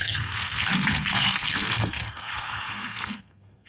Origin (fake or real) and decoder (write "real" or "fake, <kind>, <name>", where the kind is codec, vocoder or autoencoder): fake, codec, SNAC